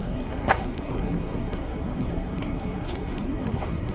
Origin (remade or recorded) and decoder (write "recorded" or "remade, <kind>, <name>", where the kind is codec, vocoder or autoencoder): remade, codec, SNAC